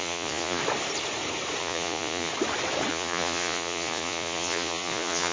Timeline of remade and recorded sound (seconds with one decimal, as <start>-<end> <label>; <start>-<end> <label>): 0.0-0.6 remade; 0.6-1.6 recorded; 1.6-2.3 remade; 2.3-2.9 recorded; 2.9-5.3 remade